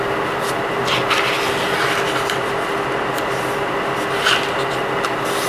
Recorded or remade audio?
recorded